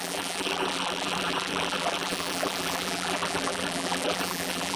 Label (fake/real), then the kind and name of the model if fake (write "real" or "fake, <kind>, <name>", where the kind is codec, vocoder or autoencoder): fake, vocoder, BigVGAN v2